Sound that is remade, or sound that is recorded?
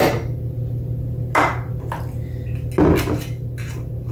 recorded